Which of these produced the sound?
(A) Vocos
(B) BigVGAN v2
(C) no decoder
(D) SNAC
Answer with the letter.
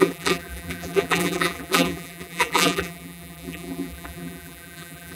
B